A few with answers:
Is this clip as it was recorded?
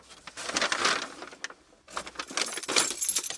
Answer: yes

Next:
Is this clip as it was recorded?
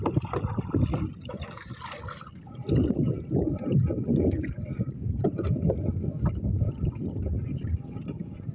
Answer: yes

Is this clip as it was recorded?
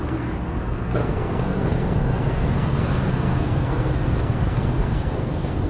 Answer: no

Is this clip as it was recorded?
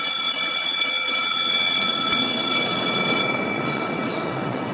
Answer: no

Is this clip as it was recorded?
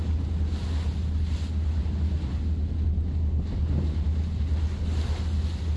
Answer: yes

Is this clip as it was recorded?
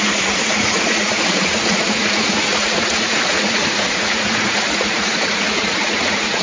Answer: no